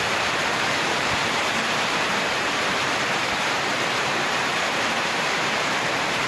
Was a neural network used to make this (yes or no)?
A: yes